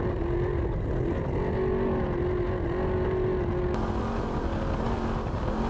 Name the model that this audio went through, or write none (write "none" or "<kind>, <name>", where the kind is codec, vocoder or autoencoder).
none